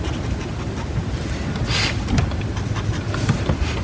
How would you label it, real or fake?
real